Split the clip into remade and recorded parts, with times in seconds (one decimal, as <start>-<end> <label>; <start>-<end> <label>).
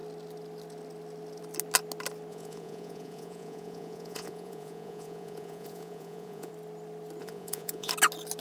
0.0-2.3 recorded; 2.3-6.5 remade; 6.5-7.2 recorded; 7.2-7.9 remade; 7.9-8.4 recorded